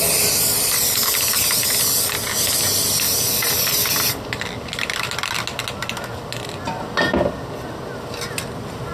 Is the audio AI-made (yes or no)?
no